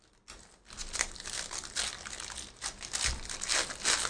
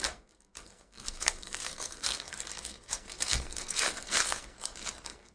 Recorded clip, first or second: first